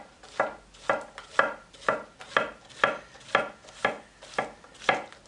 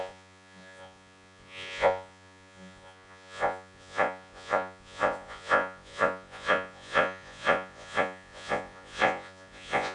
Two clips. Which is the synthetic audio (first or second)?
second